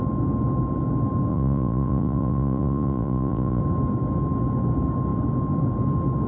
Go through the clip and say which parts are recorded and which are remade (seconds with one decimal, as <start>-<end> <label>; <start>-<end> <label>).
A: 0.0-1.3 recorded; 1.3-3.6 remade; 3.6-6.3 recorded